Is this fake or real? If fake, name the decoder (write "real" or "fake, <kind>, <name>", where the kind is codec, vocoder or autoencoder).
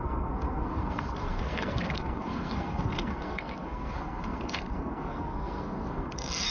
fake, codec, SNAC